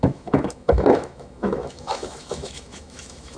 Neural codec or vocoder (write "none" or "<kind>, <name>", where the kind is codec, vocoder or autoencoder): autoencoder, DAC-VAE